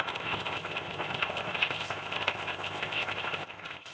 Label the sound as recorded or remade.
remade